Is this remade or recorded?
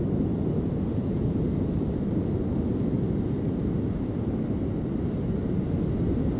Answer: recorded